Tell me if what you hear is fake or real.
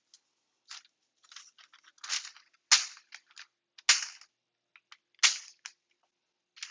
real